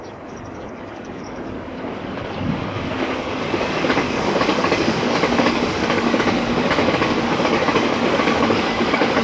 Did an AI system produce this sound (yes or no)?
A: yes